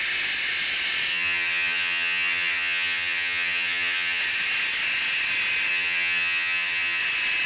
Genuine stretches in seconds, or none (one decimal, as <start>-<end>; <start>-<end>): 0.0-1.1; 4.2-5.7; 7.0-7.5